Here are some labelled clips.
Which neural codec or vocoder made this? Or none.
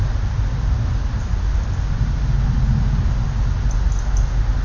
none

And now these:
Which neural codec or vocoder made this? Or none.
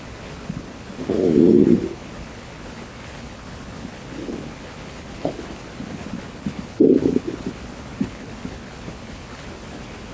codec, HILCodec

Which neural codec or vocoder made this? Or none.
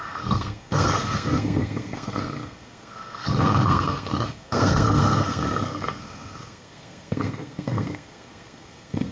codec, SNAC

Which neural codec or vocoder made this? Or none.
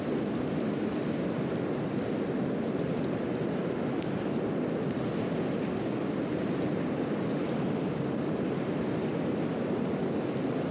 none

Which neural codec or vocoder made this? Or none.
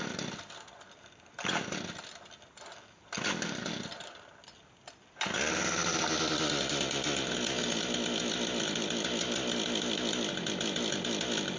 none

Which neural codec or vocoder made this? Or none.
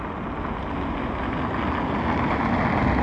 none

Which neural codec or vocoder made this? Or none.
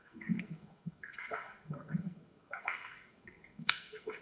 codec, SNAC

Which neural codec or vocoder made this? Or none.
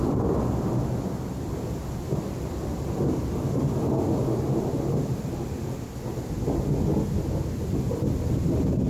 none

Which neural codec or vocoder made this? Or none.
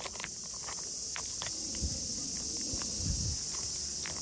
vocoder, BigVGAN v2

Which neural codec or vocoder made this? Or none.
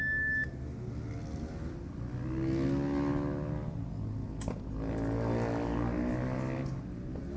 none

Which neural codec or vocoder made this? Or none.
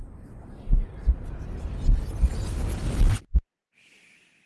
none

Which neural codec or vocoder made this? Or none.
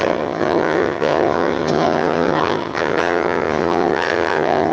vocoder, HiFi-GAN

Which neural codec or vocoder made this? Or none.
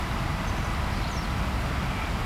none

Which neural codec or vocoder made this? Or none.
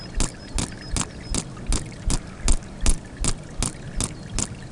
none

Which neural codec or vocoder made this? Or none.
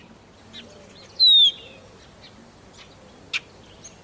none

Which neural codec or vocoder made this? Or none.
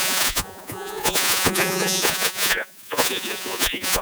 vocoder, Vocos